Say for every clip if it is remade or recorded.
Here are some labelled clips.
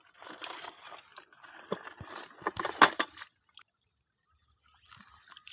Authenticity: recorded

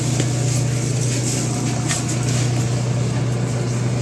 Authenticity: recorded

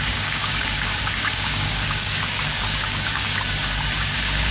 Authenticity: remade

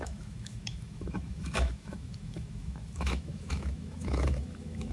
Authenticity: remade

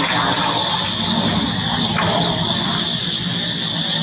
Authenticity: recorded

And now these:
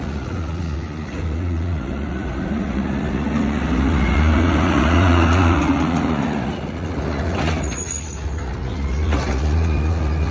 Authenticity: remade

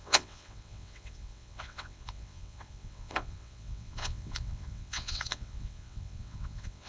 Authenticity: remade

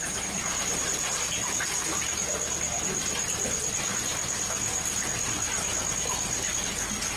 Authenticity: recorded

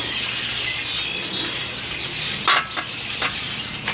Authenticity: recorded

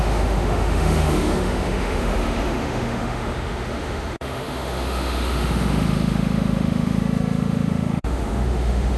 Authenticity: remade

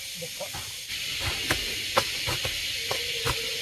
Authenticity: recorded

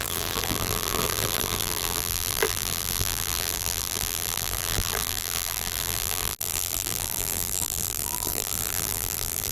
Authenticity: remade